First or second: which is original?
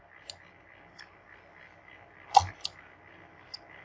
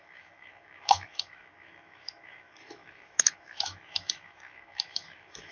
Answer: first